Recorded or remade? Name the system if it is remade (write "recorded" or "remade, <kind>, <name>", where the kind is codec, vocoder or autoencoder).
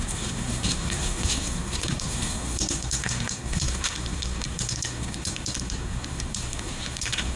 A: remade, codec, SNAC